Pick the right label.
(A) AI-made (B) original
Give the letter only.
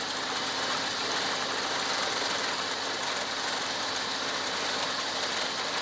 B